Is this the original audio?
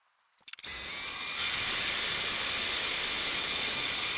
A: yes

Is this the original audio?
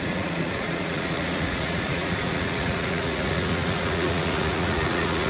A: no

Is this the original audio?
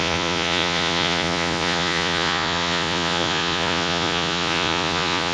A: no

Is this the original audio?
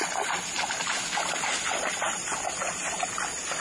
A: yes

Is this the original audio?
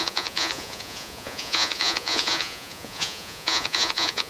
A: no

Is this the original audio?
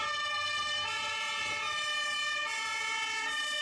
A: yes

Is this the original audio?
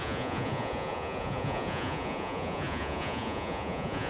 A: no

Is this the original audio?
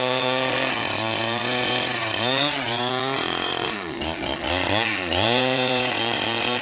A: no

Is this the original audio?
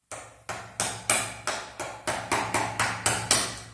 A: yes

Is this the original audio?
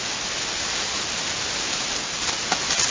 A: yes